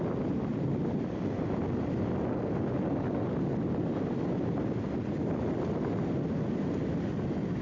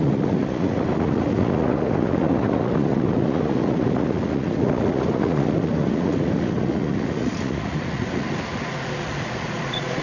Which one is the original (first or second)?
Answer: first